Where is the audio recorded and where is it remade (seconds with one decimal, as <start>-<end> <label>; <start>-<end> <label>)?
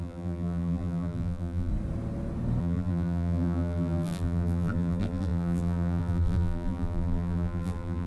0.0-1.7 remade; 1.7-2.6 recorded; 2.6-8.1 remade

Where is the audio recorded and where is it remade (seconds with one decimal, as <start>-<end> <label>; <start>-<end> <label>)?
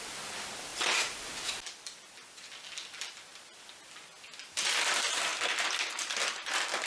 0.0-6.9 recorded